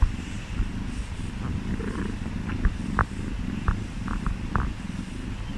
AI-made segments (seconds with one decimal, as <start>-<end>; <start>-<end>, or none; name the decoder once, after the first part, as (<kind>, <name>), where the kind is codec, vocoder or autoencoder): 3.0-4.2 (vocoder, BigVGAN v2)